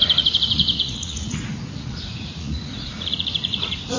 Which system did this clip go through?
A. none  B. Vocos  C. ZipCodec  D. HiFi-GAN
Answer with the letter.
B